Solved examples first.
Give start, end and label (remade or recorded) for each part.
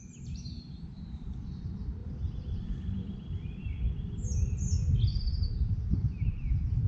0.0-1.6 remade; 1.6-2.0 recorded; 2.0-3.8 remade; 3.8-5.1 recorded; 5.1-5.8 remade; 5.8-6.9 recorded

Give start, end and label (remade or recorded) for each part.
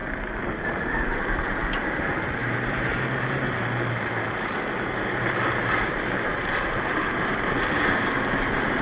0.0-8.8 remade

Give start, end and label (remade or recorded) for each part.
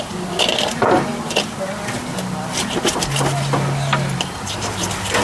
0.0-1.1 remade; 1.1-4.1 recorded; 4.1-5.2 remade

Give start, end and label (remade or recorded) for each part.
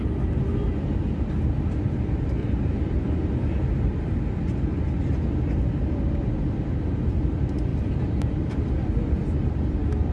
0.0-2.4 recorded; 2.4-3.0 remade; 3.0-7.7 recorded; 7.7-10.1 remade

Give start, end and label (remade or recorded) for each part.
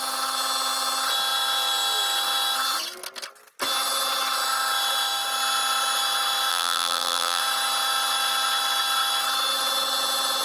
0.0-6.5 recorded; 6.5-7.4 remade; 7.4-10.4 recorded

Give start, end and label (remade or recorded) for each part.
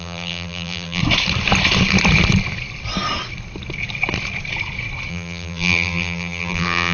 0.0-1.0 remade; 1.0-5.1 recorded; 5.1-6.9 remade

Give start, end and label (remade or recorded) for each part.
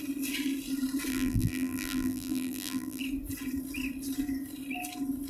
0.0-1.1 recorded; 1.1-3.0 remade; 3.0-5.3 recorded